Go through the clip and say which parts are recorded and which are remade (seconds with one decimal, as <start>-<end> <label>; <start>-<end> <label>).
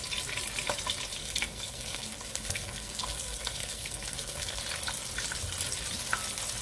0.0-1.2 recorded; 1.2-4.6 remade; 4.6-6.6 recorded